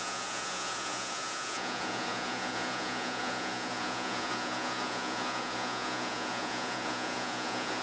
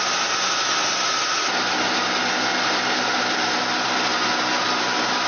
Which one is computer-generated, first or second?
first